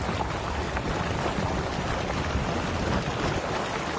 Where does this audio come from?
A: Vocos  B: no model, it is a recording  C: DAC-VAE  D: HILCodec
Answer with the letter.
B